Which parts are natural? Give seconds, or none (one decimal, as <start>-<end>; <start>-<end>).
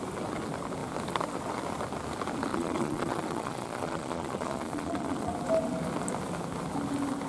0.0-2.5; 5.3-7.3